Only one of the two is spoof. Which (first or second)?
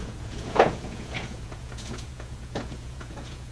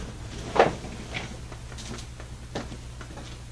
first